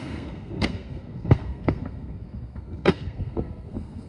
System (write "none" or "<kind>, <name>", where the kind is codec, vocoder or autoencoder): codec, SNAC